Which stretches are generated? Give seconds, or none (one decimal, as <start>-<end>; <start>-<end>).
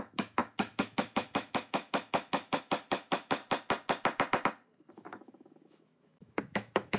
0.0-3.4; 4.9-7.0